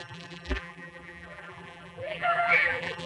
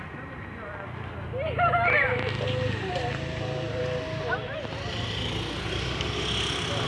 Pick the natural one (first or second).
second